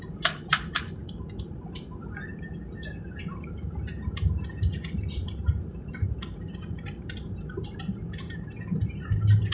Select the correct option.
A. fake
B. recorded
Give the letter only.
A